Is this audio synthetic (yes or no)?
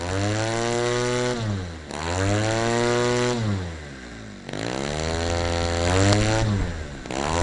no